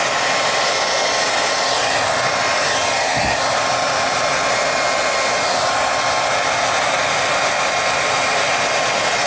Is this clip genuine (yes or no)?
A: yes